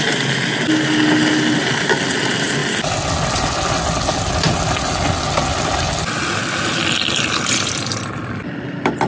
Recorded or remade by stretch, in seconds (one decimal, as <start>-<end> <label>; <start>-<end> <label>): 0.0-9.1 recorded